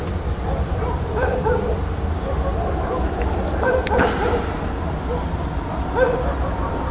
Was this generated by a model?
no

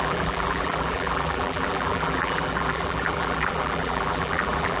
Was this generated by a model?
yes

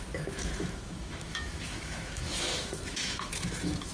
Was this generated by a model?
yes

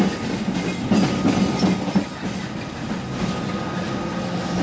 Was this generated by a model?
no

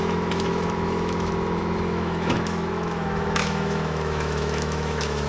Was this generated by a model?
yes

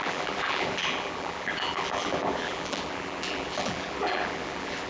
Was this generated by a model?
yes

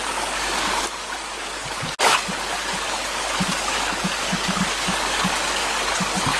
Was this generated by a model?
yes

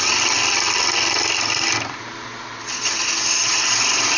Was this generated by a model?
no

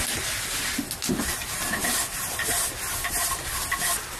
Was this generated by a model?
no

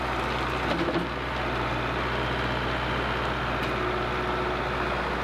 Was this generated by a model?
no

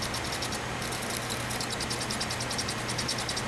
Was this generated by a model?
no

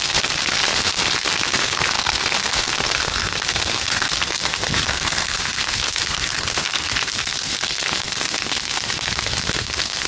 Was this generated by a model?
yes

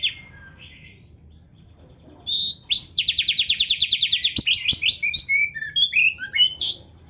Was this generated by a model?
no